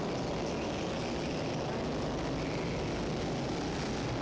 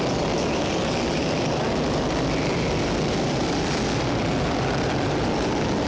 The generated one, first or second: second